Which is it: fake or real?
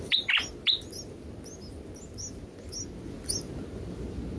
real